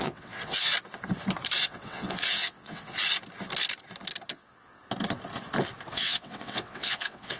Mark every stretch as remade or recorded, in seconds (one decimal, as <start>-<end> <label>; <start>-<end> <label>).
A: 0.0-0.7 remade; 0.7-1.6 recorded; 1.6-3.0 remade; 3.0-4.3 recorded; 4.3-4.8 remade; 4.8-5.9 recorded; 5.9-7.4 remade